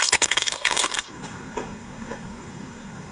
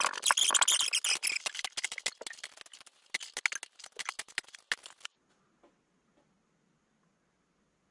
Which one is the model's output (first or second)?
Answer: first